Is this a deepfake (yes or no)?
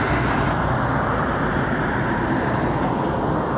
no